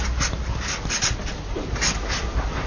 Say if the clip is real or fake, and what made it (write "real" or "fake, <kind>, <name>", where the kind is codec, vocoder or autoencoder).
real